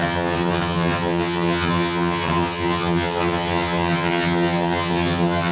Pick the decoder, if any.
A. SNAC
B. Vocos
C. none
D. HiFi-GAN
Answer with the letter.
D